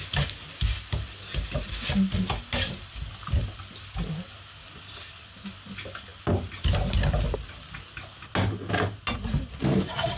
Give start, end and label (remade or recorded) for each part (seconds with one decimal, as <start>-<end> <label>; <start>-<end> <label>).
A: 0.0-10.2 recorded